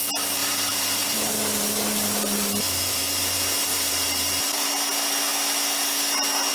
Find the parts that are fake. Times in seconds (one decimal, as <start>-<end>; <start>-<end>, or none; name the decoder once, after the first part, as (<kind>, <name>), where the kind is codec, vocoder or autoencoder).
0.4-3.0 (vocoder, BigVGAN v2); 3.7-4.7